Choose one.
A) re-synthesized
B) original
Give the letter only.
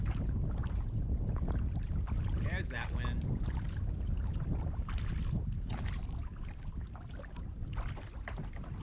B